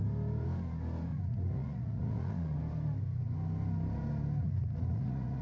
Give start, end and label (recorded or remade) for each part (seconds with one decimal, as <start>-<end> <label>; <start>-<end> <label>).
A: 0.0-1.1 recorded; 1.1-2.6 remade; 2.6-4.4 recorded; 4.4-5.4 remade